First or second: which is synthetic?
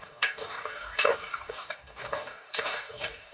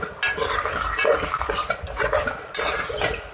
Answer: first